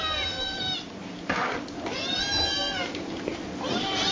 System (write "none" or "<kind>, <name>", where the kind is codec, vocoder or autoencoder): none